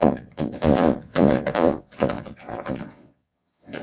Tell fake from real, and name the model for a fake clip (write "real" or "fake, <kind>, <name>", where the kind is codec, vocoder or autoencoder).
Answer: fake, vocoder, Vocos